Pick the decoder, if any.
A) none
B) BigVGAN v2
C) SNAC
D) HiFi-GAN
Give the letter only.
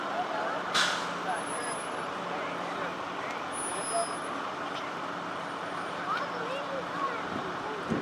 A